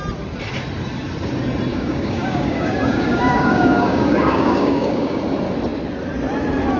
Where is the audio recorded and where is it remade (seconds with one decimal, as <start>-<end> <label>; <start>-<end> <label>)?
0.0-1.7 recorded; 1.7-5.2 remade; 5.2-6.8 recorded